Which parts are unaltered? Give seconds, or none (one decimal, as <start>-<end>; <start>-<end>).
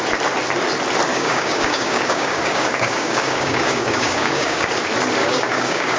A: 0.0-1.1; 4.7-5.2